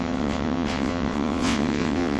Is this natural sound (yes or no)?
no